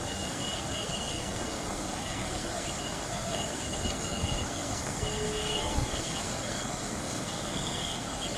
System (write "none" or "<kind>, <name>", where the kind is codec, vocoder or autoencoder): codec, SNAC